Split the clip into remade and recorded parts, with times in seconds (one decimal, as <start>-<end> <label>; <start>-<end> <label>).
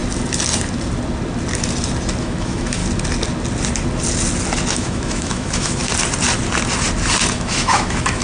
0.0-2.2 recorded; 2.2-2.8 remade; 2.8-4.7 recorded; 4.7-5.8 remade; 5.8-7.3 recorded; 7.3-8.2 remade